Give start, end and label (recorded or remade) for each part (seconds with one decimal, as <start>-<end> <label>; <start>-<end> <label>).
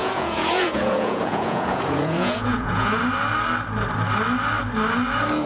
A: 0.0-3.0 remade; 3.0-5.5 recorded